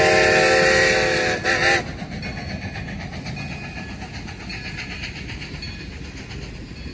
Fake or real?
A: real